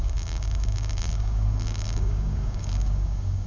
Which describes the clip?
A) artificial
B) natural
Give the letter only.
A